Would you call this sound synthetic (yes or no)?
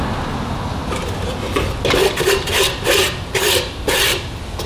no